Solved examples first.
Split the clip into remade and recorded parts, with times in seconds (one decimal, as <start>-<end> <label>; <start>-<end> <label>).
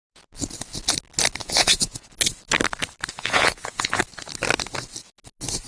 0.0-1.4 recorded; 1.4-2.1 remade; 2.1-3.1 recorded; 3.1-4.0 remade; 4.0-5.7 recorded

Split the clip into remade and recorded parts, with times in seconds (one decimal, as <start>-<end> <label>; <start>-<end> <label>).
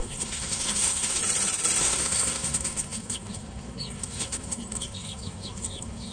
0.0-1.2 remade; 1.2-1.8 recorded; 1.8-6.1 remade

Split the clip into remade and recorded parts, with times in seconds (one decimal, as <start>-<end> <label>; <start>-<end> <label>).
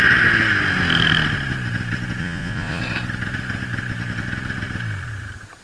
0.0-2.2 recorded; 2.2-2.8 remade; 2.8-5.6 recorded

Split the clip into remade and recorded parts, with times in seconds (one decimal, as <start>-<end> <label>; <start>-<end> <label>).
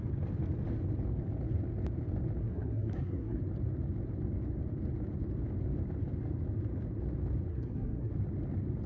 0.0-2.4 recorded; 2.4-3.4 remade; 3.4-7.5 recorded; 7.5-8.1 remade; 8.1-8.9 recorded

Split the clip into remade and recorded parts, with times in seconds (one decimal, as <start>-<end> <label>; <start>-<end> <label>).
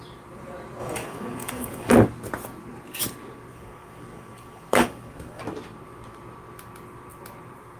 0.0-0.8 recorded; 0.8-1.9 remade; 1.9-3.5 recorded; 3.5-5.4 remade; 5.4-7.8 recorded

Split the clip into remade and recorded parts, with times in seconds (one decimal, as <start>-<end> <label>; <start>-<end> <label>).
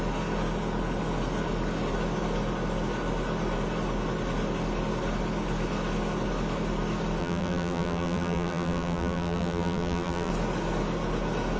0.0-7.2 recorded; 7.2-10.3 remade; 10.3-11.6 recorded